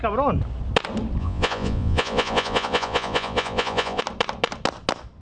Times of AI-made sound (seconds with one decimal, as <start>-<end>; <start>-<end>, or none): 1.2-4.0